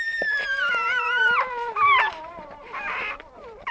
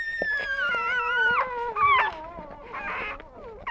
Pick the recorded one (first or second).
second